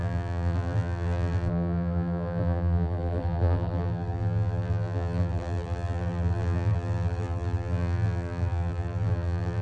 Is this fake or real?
fake